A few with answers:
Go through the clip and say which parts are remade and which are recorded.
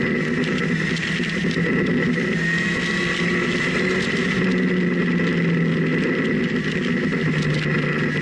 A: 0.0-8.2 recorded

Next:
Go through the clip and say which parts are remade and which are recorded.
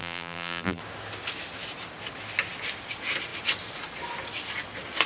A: 0.0-0.8 remade; 0.8-5.1 recorded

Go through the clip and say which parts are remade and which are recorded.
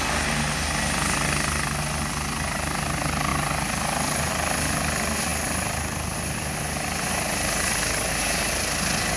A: 0.0-9.2 recorded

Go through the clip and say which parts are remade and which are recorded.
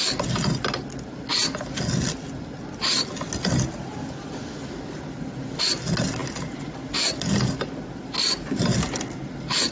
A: 0.0-9.7 recorded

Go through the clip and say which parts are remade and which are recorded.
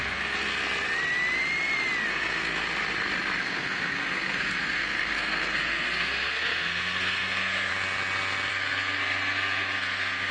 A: 0.0-0.5 remade; 0.5-2.1 recorded; 2.1-2.5 remade; 2.5-3.4 recorded; 3.4-7.7 remade; 7.7-8.5 recorded; 8.5-10.3 remade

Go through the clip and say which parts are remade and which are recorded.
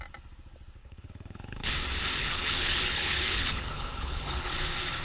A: 0.0-0.8 recorded; 0.8-1.7 remade; 1.7-2.2 recorded; 2.2-4.5 remade; 4.5-5.0 recorded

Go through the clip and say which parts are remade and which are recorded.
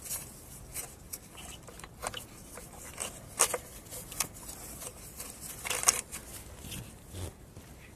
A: 0.0-2.0 remade; 2.0-6.8 recorded; 6.8-8.0 remade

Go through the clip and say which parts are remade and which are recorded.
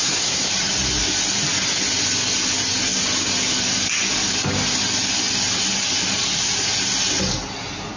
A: 0.0-0.5 remade; 0.5-8.0 recorded